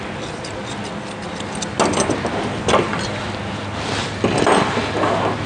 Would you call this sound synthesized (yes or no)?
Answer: no